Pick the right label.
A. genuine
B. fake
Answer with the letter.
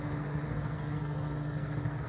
B